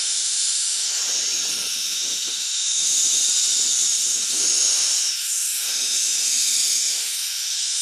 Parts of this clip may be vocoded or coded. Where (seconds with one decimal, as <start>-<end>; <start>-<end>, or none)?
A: 0.0-1.0; 1.7-3.2; 3.9-7.8